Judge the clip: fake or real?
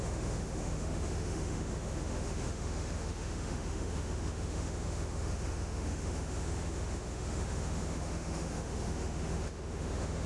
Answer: fake